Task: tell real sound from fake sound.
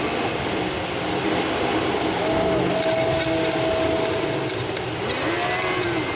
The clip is real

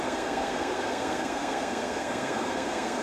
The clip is fake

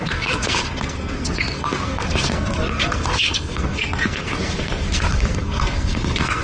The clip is fake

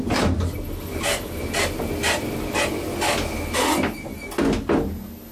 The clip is real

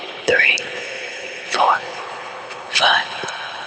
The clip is fake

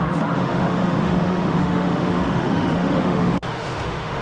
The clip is fake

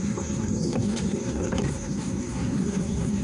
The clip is fake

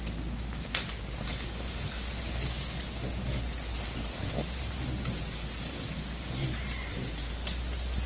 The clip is real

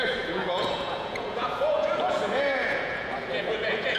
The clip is fake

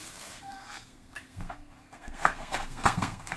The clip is fake